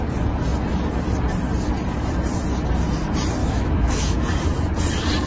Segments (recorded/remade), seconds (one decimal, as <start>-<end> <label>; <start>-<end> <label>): 0.0-3.4 recorded; 3.4-4.2 remade; 4.2-5.3 recorded